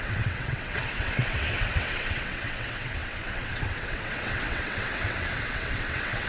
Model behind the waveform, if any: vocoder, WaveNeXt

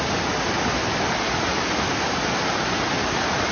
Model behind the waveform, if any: none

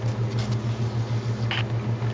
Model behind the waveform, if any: none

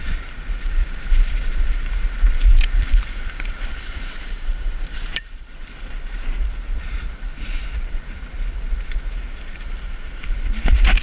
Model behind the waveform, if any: vocoder, BigVGAN v2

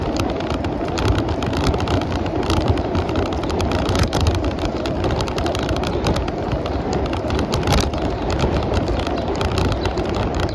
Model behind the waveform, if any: vocoder, BigVGAN v2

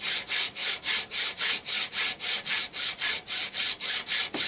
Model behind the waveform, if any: vocoder, BigVGAN v2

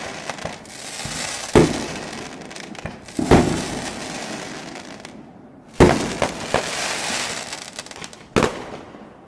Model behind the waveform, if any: none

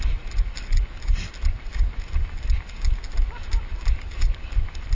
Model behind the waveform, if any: none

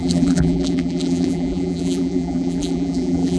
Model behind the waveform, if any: vocoder, BigVGAN v2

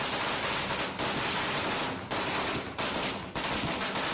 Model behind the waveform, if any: none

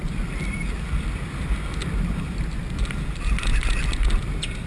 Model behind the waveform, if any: none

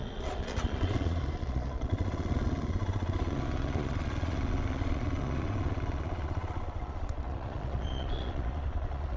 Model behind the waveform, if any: vocoder, Vocos